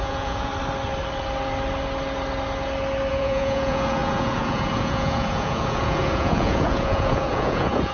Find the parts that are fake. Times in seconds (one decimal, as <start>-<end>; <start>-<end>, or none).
0.0-0.5; 3.1-7.9